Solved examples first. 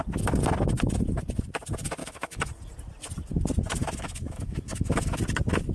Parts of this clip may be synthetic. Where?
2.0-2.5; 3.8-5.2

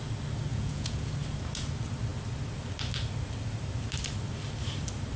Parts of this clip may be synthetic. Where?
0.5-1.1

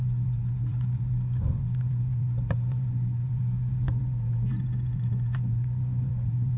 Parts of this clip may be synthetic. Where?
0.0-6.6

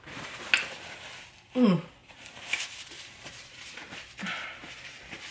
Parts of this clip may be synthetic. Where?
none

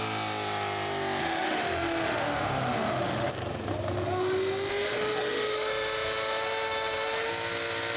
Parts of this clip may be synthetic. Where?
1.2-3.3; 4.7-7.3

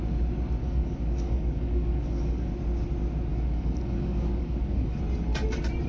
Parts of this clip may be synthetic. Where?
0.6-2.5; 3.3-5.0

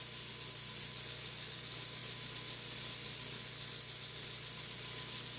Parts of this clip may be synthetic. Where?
none